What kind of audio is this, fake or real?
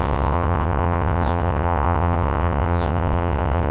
fake